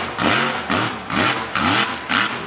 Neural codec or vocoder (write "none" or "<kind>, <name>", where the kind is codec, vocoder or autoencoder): none